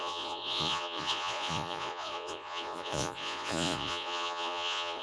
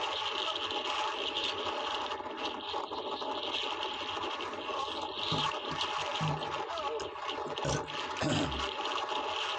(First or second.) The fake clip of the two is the first